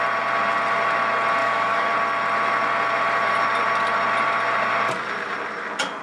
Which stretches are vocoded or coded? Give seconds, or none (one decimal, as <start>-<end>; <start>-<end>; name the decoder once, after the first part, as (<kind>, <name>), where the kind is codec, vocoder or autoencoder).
1.4-1.9 (codec, DAC)